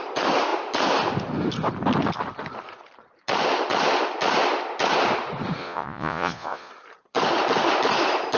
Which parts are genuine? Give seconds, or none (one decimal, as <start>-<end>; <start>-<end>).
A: 0.0-5.6; 6.7-8.4

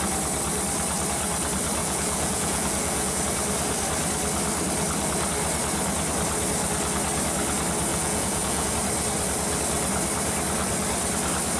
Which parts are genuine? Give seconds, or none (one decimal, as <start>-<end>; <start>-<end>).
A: 0.0-1.8; 3.2-7.9; 8.7-11.6

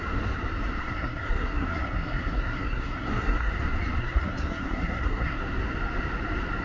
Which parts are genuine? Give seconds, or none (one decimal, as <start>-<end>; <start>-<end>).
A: 0.0-0.8; 3.5-4.0; 5.4-6.6

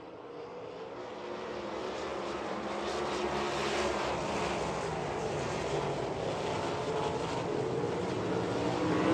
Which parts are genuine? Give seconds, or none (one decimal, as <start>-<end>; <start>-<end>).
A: 0.0-9.1